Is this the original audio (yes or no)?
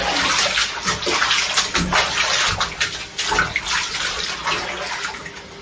yes